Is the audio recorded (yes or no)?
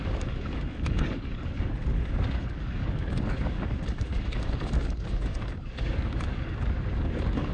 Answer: no